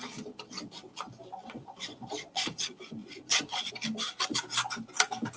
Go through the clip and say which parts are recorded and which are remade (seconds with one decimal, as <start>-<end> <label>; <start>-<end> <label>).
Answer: 0.0-1.4 recorded; 1.4-2.5 remade; 2.5-3.0 recorded; 3.0-3.7 remade; 3.7-5.4 recorded